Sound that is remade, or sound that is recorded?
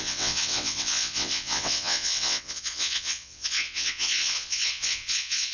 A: remade